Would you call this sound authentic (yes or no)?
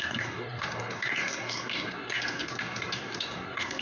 no